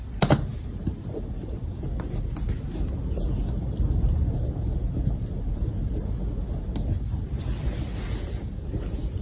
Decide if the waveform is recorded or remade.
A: recorded